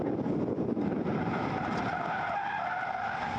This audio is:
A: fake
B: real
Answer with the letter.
B